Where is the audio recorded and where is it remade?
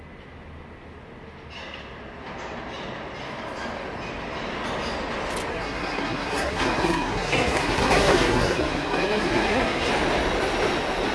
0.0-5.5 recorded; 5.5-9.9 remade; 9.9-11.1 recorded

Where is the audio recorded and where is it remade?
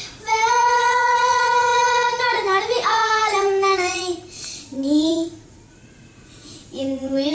0.0-7.3 remade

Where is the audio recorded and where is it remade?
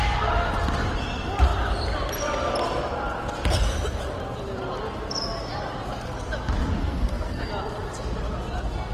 0.0-6.8 recorded; 6.8-7.5 remade; 7.5-8.9 recorded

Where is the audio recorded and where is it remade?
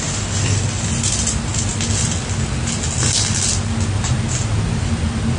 0.0-5.4 recorded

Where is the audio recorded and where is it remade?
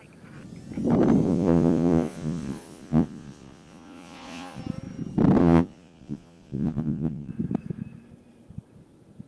0.0-1.2 recorded; 1.2-4.6 remade; 4.6-5.4 recorded; 5.4-7.3 remade; 7.3-9.3 recorded